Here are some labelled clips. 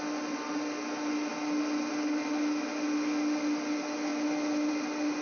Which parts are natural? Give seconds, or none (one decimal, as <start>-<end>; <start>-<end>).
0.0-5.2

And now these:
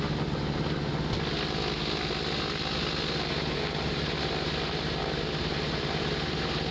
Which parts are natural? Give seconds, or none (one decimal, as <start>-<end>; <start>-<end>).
0.9-3.3

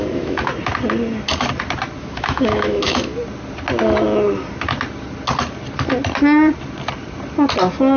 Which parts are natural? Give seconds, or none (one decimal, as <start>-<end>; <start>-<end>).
0.5-2.0; 3.1-8.0

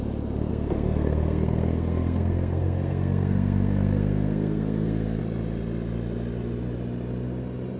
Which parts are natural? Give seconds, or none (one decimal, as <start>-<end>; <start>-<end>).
0.0-0.5; 5.2-7.8

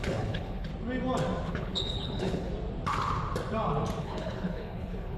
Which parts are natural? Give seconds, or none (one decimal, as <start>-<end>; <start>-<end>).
0.7-1.5; 2.5-4.0

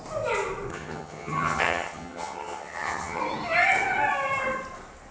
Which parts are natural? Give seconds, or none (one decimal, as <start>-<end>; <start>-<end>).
0.0-0.7; 3.2-5.1

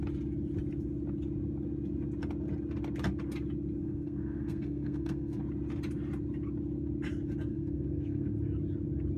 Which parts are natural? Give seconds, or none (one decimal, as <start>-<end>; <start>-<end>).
0.0-3.8; 5.4-7.5; 8.3-9.2